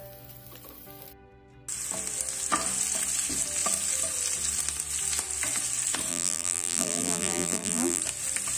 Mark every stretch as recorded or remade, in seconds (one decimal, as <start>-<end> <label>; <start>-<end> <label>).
0.0-6.1 recorded; 6.1-8.0 remade; 8.0-8.6 recorded